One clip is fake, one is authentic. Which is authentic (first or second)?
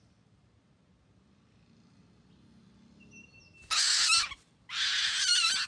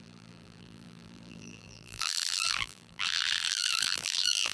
first